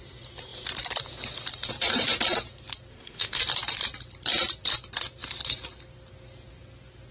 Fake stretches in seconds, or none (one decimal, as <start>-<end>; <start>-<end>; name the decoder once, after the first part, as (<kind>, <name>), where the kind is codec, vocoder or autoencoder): 2.9-3.4 (autoencoder, DAC-VAE)

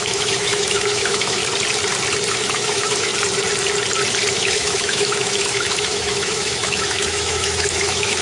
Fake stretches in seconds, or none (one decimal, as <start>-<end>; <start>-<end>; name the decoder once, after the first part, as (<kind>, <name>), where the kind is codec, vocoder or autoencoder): 0.0-1.4 (autoencoder, DAC-VAE); 2.3-3.1; 4.3-8.2

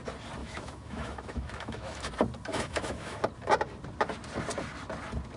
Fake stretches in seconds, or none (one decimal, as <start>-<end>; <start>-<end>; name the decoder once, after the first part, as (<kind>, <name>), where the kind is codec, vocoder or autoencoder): 0.4-2.1 (autoencoder, DAC-VAE); 2.5-3.2